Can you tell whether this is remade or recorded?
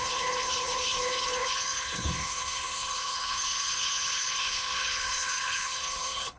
remade